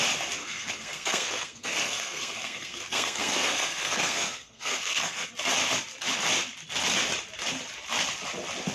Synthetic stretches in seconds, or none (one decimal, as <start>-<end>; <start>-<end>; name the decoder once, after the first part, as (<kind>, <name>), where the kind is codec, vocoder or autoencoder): 0.4-5.3 (codec, SNAC)